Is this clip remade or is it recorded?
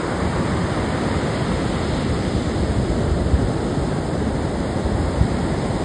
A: recorded